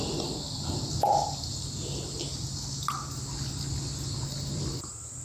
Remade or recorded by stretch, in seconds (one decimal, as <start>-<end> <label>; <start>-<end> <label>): 0.0-5.2 recorded